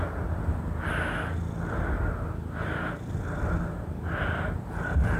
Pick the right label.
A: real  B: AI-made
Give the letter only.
A